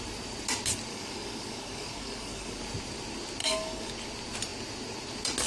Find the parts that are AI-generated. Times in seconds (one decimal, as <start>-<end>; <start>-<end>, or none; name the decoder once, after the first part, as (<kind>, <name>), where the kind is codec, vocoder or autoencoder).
0.9-2.6 (codec, DAC); 3.4-3.9